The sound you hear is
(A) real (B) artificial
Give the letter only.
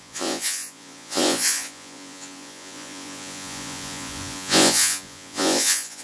B